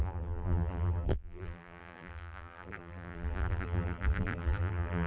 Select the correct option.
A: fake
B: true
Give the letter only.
A